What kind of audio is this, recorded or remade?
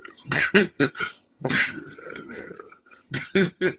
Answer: remade